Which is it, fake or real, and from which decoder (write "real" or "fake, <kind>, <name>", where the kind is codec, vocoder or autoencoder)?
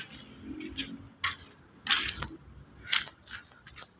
real